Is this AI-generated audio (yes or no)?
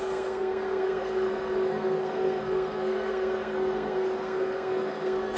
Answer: yes